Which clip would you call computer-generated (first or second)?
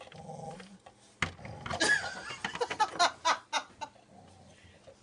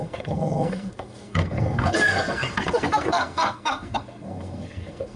second